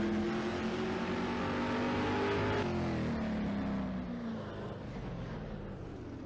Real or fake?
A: real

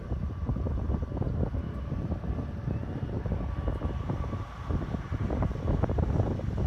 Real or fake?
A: real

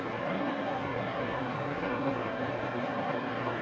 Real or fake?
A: fake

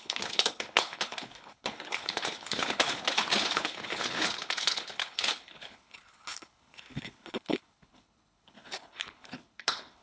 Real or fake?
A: fake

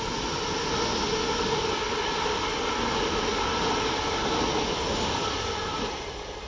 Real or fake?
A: real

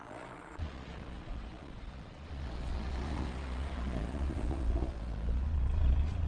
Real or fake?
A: fake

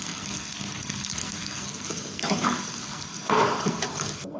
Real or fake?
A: fake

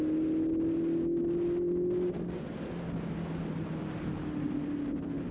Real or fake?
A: real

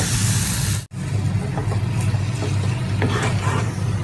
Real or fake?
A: real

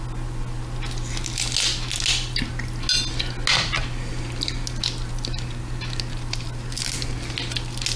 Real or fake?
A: real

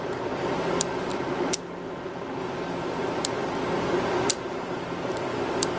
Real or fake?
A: fake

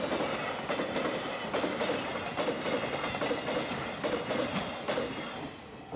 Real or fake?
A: real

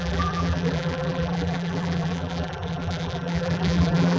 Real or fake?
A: fake